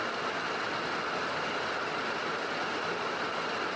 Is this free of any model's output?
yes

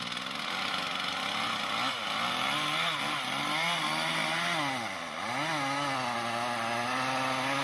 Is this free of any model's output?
yes